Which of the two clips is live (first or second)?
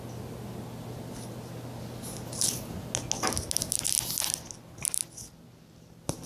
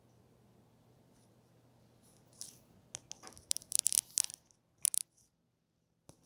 first